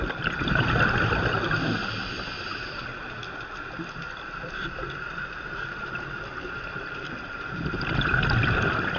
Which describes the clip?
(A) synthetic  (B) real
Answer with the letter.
A